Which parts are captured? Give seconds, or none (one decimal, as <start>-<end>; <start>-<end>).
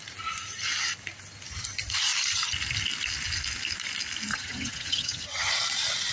0.0-4.3; 5.5-6.1